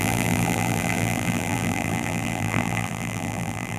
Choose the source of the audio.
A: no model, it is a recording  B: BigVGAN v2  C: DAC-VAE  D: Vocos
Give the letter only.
B